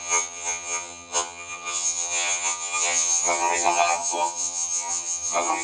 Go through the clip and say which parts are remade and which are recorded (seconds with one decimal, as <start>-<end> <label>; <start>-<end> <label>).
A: 0.0-5.6 remade